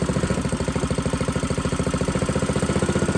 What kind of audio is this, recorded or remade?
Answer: recorded